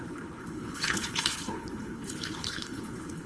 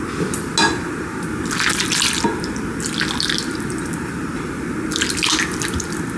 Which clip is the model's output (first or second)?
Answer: first